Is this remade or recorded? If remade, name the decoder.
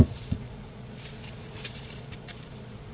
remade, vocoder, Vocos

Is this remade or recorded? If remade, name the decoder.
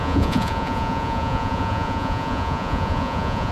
remade, vocoder, Vocos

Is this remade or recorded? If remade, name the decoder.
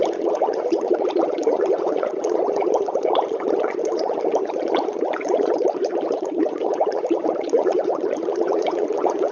remade, vocoder, Vocos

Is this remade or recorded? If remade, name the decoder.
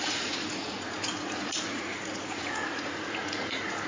remade, vocoder, Vocos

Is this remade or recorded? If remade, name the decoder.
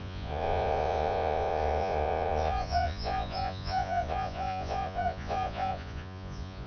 remade, vocoder, Vocos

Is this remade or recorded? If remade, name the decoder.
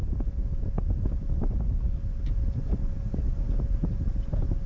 recorded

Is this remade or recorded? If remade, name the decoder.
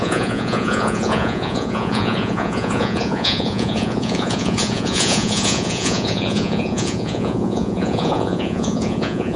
remade, vocoder, Vocos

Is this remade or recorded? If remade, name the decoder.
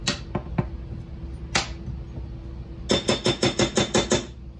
recorded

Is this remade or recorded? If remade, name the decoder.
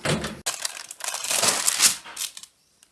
recorded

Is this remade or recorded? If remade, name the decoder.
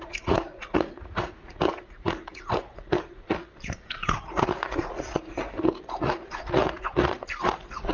remade, vocoder, Vocos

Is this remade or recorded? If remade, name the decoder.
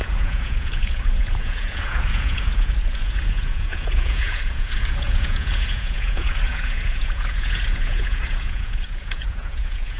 remade, vocoder, Vocos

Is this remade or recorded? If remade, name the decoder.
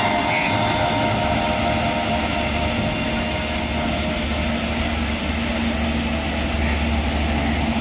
recorded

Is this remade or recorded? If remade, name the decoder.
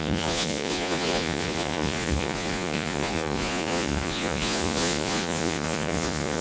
remade, vocoder, Vocos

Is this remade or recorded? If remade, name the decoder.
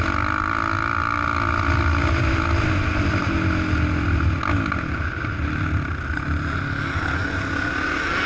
recorded